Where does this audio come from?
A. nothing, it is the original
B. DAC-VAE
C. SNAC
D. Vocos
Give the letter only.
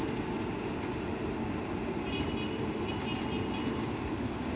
A